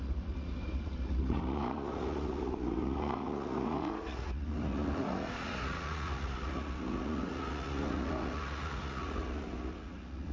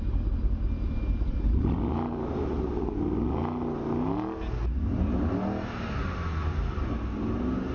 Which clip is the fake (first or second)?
first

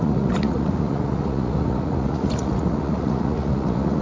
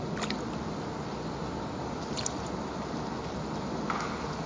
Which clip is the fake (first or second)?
first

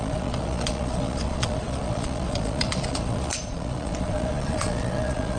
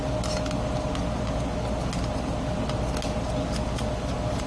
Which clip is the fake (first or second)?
first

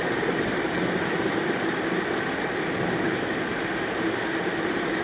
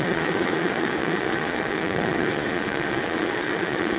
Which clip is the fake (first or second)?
second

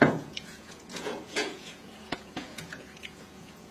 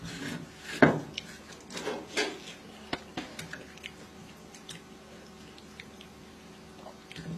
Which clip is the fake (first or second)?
first